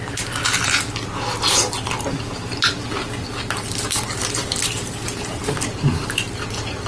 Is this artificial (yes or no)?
no